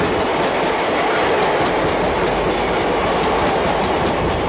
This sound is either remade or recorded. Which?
recorded